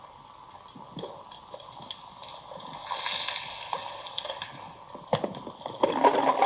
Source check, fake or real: real